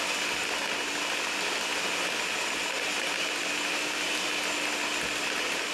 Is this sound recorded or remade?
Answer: recorded